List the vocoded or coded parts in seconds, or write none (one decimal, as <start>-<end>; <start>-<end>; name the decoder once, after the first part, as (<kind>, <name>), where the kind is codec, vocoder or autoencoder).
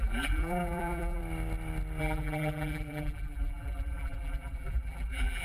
0.0-1.2 (vocoder, BigVGAN v2); 2.0-5.4